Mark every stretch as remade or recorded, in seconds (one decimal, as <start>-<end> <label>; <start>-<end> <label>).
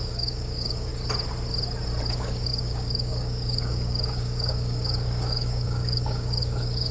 0.0-0.9 remade; 0.9-2.1 recorded; 2.1-6.9 remade